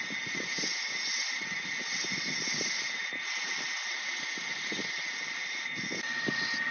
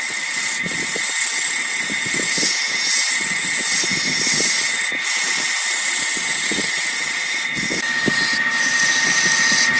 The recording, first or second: second